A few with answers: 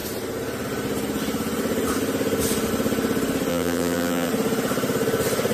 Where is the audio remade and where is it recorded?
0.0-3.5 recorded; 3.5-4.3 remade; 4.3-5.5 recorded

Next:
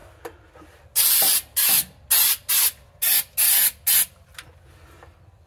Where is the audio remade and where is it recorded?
0.0-5.5 recorded

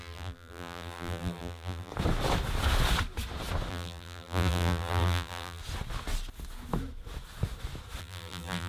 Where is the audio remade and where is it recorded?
0.0-1.9 remade; 1.9-3.7 recorded; 3.7-5.6 remade; 5.6-8.0 recorded; 8.0-8.7 remade

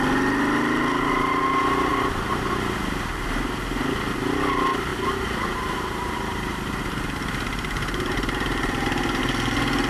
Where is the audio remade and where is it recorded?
0.0-1.9 recorded; 1.9-3.4 remade; 3.4-4.9 recorded; 4.9-9.2 remade; 9.2-9.9 recorded

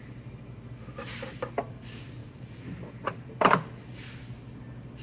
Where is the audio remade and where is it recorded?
0.0-2.2 recorded; 2.2-2.9 remade; 2.9-5.0 recorded

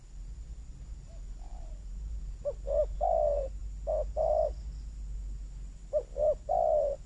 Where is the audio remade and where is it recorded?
0.0-1.5 recorded; 1.5-2.2 remade; 2.2-7.1 recorded

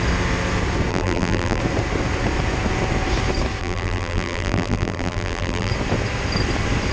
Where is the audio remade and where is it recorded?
0.0-0.9 recorded; 0.9-1.6 remade; 1.6-3.6 recorded; 3.6-5.7 remade; 5.7-6.9 recorded

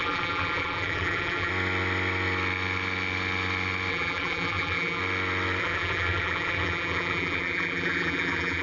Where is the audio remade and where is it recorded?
0.0-1.5 remade; 1.5-3.9 recorded; 3.9-5.0 remade; 5.0-5.6 recorded; 5.6-8.6 remade